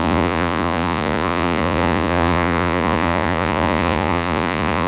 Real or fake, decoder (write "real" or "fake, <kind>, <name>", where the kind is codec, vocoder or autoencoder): fake, vocoder, Vocos